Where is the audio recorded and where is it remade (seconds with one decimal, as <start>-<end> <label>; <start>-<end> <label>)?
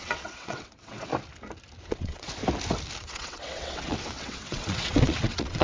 0.0-1.1 remade; 1.1-1.9 recorded; 1.9-2.4 remade; 2.4-3.0 recorded; 3.0-5.6 remade